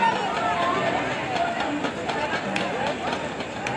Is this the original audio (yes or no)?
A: yes